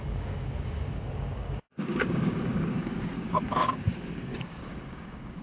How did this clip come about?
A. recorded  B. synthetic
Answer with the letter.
B